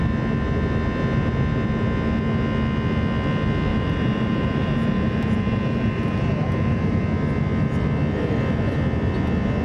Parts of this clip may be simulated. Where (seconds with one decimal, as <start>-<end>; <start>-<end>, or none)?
3.7-7.0